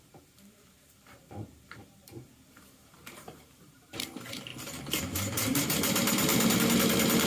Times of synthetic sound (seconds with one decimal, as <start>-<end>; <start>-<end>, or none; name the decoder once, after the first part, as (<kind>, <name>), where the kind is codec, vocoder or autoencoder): 0.0-4.5 (vocoder, BigVGAN v2); 5.0-7.3